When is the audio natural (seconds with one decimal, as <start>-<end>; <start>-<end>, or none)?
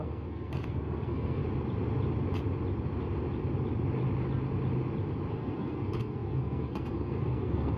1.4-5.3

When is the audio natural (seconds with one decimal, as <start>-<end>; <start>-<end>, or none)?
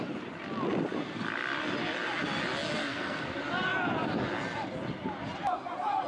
0.0-2.8; 3.3-6.1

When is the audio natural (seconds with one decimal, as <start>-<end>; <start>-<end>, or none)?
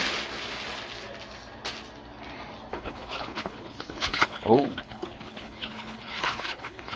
0.0-2.7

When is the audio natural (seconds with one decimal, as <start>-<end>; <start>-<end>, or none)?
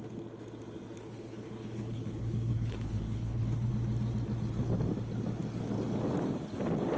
0.0-1.0; 3.7-7.0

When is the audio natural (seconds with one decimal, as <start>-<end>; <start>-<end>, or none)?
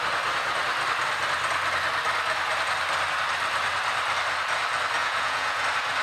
0.0-5.0; 5.6-6.0